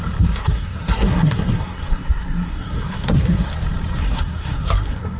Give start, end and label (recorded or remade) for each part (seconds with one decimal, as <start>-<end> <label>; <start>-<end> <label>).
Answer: 0.0-0.4 recorded; 0.4-3.5 remade; 3.5-4.0 recorded; 4.0-5.2 remade